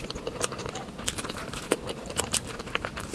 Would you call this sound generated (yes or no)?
no